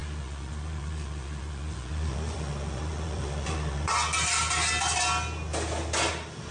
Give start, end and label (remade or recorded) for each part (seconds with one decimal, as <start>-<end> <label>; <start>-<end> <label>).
0.0-3.9 remade; 3.9-6.5 recorded